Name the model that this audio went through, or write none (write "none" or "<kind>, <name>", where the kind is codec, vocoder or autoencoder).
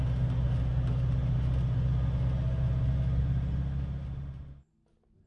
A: none